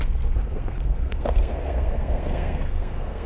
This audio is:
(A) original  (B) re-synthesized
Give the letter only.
B